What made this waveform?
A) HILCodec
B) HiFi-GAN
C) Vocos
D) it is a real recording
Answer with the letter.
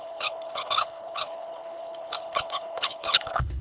A